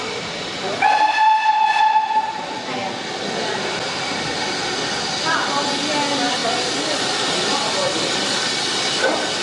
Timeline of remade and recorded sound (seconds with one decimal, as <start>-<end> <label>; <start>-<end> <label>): 0.0-9.4 recorded